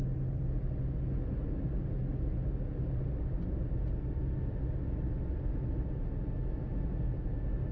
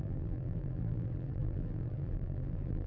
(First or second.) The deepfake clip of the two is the second